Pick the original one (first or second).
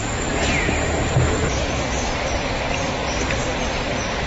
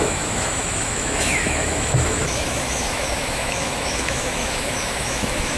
first